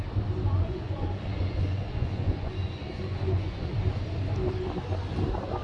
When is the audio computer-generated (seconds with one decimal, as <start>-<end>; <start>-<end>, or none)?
0.5-3.7